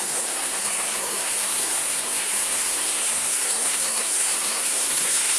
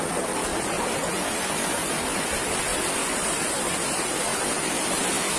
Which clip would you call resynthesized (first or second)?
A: first